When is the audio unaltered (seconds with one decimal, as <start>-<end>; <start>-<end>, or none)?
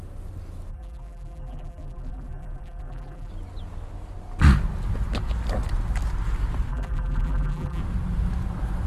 0.0-0.7; 3.3-6.7; 7.8-8.9